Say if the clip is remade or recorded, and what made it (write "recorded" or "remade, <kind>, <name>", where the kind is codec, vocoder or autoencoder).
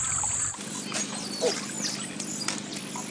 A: recorded